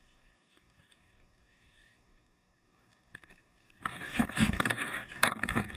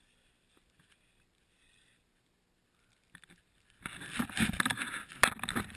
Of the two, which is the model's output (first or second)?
first